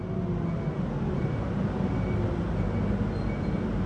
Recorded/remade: recorded